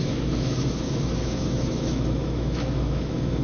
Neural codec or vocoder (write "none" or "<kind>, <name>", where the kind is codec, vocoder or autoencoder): autoencoder, DAC-VAE